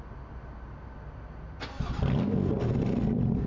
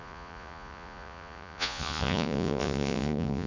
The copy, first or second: second